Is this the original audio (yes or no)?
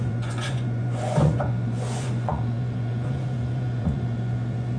no